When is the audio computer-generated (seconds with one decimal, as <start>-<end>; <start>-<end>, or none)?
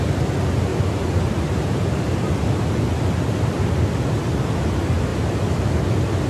none